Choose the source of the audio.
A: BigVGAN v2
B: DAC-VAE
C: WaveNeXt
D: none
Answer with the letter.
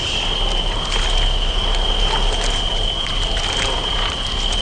D